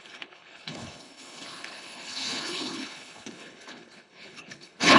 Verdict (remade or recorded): remade